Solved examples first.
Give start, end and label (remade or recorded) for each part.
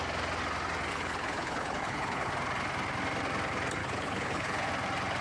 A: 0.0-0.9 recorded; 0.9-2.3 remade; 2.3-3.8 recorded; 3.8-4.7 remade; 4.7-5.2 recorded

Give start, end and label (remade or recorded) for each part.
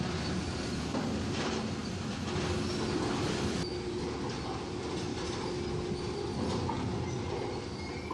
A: 0.0-5.1 recorded; 5.1-5.6 remade; 5.6-8.1 recorded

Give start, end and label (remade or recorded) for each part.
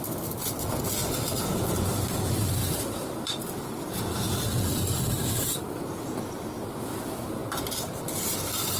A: 0.0-1.0 recorded; 1.0-4.0 remade; 4.0-4.7 recorded; 4.7-5.6 remade; 5.6-8.8 recorded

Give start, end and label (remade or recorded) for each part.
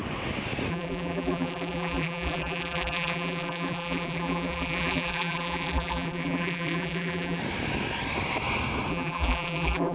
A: 0.0-0.7 recorded; 0.7-7.4 remade; 7.4-8.9 recorded; 8.9-9.9 remade